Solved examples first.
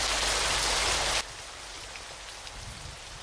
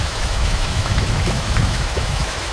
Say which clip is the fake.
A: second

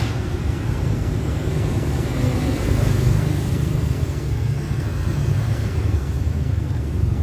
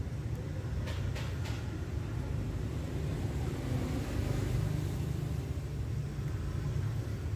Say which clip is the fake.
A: first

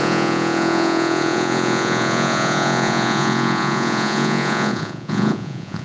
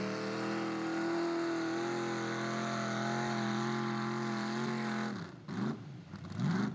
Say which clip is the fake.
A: first